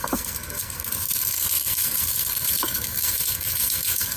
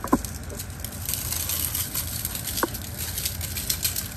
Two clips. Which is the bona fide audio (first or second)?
second